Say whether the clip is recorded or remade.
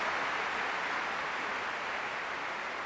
recorded